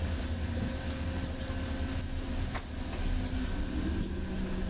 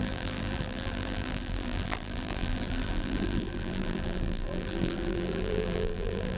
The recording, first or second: first